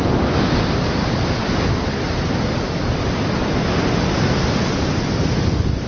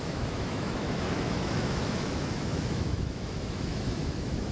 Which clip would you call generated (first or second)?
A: second